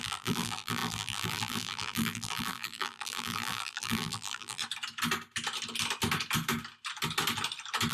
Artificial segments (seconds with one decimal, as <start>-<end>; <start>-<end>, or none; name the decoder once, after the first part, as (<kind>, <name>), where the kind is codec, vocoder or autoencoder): 0.0-4.6 (vocoder, BigVGAN v2)